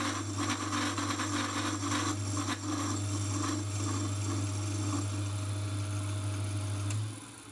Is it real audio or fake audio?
real